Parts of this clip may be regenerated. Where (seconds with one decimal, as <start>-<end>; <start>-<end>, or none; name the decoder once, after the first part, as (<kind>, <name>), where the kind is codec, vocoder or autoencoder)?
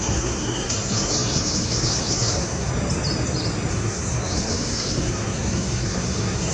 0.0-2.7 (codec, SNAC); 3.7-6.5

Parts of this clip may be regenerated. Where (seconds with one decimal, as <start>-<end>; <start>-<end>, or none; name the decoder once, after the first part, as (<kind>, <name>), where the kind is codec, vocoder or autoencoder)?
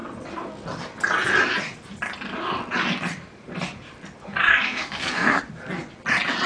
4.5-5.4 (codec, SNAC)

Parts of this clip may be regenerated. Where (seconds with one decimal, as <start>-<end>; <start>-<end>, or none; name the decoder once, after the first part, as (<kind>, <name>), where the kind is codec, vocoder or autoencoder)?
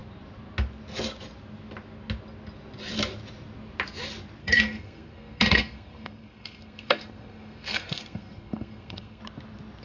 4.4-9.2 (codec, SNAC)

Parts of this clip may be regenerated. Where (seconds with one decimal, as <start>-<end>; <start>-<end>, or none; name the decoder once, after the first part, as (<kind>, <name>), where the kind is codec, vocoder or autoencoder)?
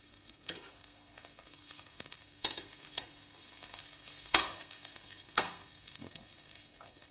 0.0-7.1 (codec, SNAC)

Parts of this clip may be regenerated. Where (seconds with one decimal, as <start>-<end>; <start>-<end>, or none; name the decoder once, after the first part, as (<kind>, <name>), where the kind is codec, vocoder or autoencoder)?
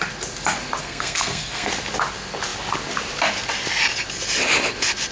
0.8-1.7 (codec, SNAC)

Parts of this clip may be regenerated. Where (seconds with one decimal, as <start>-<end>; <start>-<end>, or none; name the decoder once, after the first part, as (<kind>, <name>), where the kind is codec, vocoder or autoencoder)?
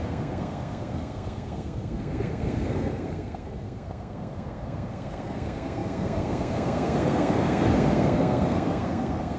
0.0-9.4 (codec, SNAC)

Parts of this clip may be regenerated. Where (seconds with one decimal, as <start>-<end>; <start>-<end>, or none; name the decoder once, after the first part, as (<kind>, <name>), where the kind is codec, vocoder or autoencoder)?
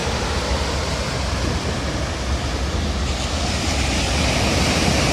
none